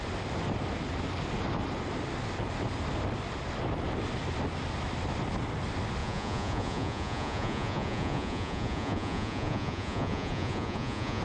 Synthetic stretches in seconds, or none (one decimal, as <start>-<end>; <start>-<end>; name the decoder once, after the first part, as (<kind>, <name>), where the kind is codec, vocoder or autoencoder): 6.0-11.2 (vocoder, Vocos)